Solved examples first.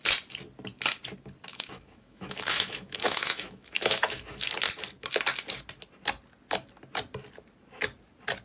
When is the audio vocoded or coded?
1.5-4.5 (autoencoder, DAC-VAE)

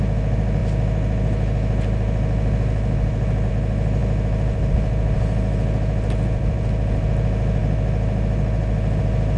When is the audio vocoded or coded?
none

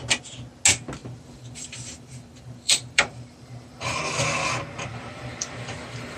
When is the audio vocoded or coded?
1.0-4.0 (vocoder, BigVGAN v2); 4.9-6.2

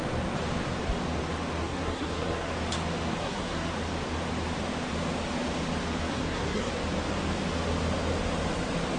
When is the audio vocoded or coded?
1.6-2.5 (codec, SNAC); 3.2-3.7; 6.1-6.7

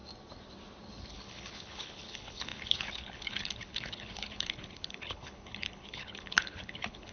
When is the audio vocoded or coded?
1.1-7.1 (codec, HILCodec)

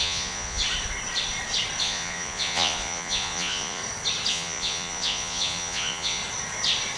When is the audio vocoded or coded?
0.0-0.6 (vocoder, Vocos); 1.8-3.8; 4.3-6.2